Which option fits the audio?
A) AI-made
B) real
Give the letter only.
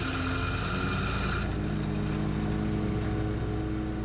B